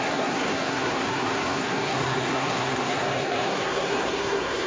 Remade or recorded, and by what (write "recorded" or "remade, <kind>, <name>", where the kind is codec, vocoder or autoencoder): remade, codec, SNAC